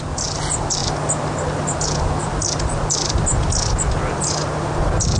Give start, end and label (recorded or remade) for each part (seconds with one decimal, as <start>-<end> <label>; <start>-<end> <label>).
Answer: 0.0-5.2 recorded